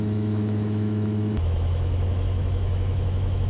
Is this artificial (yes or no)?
yes